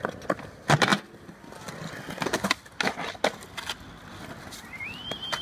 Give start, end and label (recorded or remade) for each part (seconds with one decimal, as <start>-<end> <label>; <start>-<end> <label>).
0.0-5.4 recorded